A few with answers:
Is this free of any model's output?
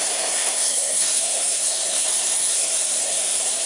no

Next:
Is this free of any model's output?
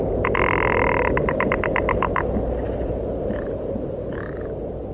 yes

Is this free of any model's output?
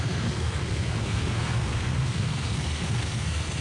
no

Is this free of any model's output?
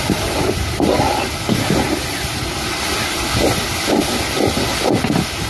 yes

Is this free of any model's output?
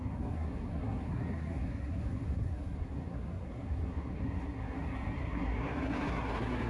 no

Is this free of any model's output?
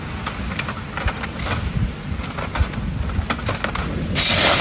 yes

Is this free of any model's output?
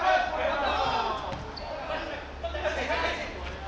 yes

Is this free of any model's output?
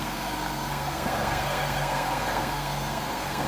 no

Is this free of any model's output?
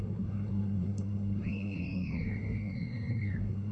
no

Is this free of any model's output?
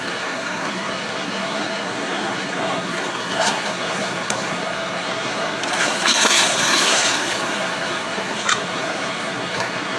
no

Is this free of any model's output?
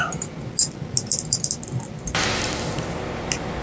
yes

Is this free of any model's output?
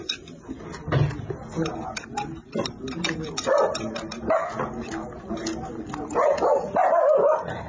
yes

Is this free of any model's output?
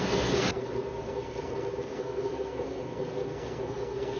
no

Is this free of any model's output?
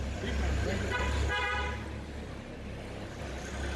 yes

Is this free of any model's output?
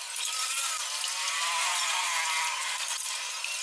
yes